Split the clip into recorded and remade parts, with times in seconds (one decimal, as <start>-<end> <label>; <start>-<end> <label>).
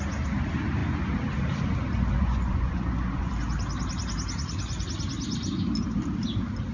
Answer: 0.0-2.2 recorded; 2.2-3.3 remade; 3.3-6.7 recorded